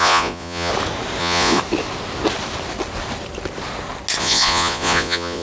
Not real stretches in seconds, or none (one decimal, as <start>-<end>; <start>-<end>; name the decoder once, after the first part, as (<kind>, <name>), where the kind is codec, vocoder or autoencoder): 0.0-0.7 (vocoder, Vocos); 1.2-1.6; 4.2-5.4